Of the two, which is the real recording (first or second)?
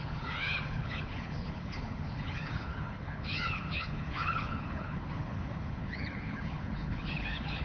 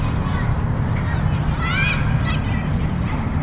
second